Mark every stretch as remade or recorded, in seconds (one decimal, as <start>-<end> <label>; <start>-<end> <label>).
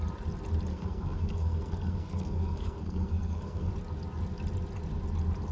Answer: 0.0-0.7 recorded; 0.7-3.7 remade; 3.7-5.5 recorded